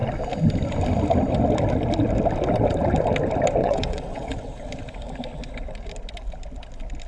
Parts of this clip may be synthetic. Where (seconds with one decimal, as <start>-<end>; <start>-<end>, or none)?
3.6-4.5